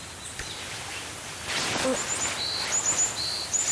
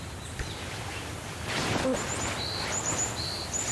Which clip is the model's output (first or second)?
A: second